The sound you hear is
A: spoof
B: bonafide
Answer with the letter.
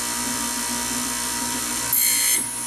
B